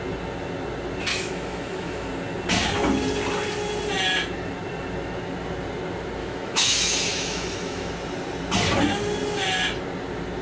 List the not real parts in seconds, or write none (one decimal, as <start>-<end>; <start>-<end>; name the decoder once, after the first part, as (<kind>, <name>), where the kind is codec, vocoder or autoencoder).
1.1-2.1 (autoencoder, DAC-VAE); 6.2-7.9